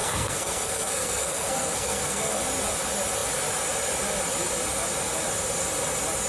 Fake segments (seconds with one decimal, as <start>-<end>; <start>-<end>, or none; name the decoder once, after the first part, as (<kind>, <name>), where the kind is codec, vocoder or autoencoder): 0.0-2.4 (codec, SNAC)